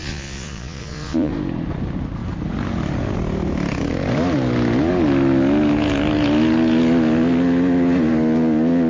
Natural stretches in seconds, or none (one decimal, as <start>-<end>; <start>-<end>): 1.3-8.9